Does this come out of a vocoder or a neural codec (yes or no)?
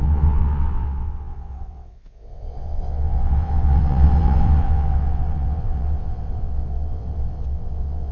yes